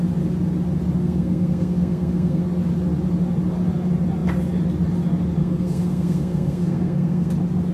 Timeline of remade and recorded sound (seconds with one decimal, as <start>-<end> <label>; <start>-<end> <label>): 0.0-1.0 recorded; 1.0-2.4 remade; 2.4-5.4 recorded; 5.4-7.3 remade; 7.3-7.7 recorded